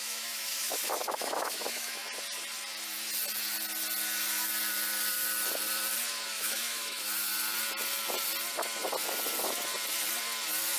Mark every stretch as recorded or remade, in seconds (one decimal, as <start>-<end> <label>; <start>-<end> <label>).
0.0-2.0 remade; 2.0-6.3 recorded; 6.3-7.3 remade; 7.3-10.8 recorded